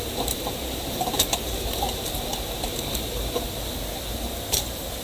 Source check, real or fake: fake